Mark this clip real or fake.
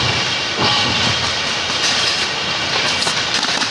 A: fake